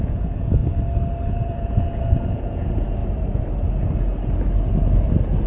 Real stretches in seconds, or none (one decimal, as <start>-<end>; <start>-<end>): 0.6-1.3; 3.0-5.5